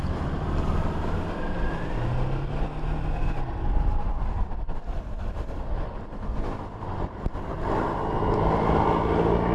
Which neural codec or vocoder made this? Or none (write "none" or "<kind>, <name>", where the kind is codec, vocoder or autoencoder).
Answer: none